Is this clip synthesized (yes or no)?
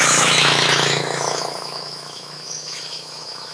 yes